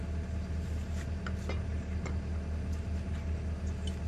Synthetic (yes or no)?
no